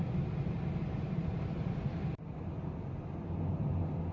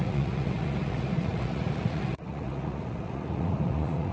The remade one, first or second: second